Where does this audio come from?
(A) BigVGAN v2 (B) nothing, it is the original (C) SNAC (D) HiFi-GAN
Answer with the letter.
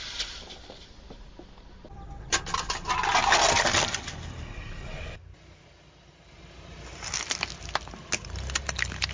B